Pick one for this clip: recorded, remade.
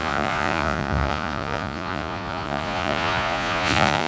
remade